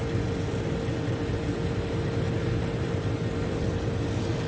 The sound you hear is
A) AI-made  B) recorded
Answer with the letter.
B